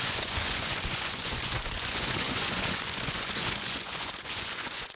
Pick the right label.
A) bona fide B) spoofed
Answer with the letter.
B